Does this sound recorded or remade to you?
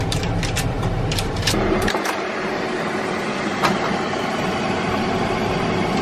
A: remade